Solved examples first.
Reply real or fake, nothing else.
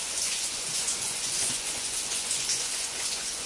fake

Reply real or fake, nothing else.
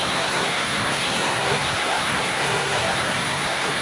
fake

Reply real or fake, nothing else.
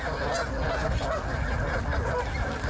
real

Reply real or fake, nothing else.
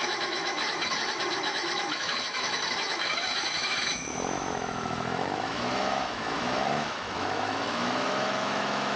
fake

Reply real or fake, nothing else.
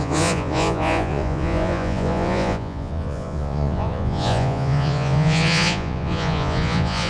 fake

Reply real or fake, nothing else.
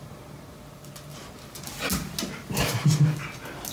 real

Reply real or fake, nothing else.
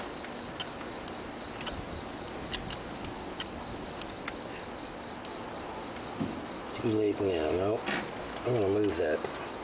real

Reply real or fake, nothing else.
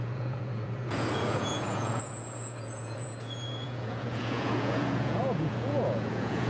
fake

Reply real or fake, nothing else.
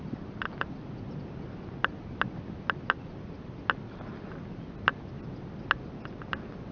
real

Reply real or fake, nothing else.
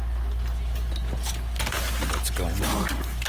real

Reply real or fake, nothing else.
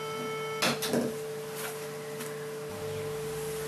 real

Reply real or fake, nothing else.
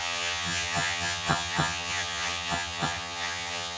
fake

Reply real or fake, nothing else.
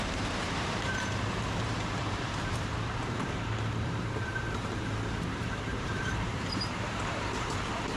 fake